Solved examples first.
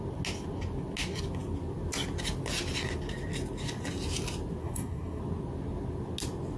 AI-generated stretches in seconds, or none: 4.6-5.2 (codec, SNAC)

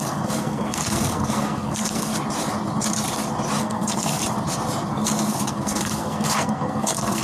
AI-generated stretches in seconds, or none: 0.0-2.1 (codec, SNAC); 3.6-4.2; 4.9-7.2

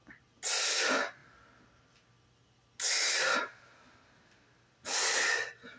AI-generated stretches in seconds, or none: none

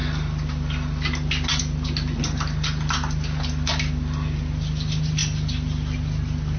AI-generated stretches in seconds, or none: none

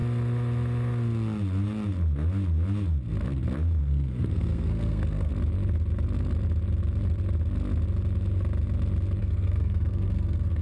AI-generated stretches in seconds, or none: 3.8-5.3 (codec, SNAC); 9.2-10.6

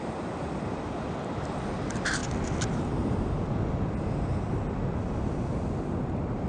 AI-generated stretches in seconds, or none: none

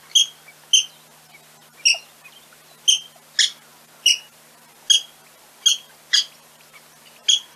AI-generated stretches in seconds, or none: none

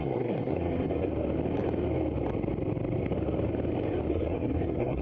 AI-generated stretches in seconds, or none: 0.0-1.1 (codec, SNAC); 4.1-5.0